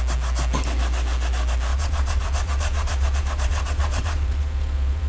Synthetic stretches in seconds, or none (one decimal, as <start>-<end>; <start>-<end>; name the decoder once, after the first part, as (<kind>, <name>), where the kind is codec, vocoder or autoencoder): 1.7-5.1 (vocoder, Vocos)